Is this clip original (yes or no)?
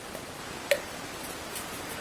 yes